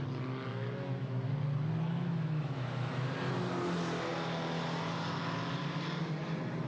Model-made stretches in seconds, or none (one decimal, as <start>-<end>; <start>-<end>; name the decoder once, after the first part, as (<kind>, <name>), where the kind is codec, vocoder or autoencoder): 0.5-1.3 (autoencoder, DAC-VAE); 1.9-3.0